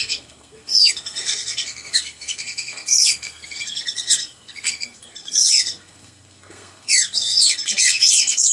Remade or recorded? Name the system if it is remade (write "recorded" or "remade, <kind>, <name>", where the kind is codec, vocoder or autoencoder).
remade, codec, SNAC